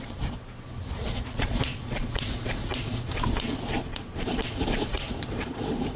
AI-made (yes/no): yes